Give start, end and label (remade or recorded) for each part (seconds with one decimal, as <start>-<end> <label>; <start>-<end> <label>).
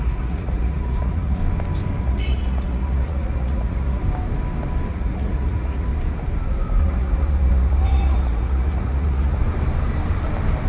0.0-1.4 remade; 1.4-2.0 recorded; 2.0-4.0 remade; 4.0-4.9 recorded; 4.9-5.9 remade; 5.9-6.8 recorded; 6.8-9.4 remade; 9.4-10.7 recorded